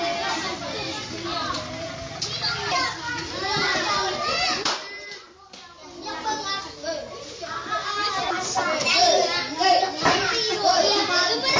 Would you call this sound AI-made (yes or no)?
no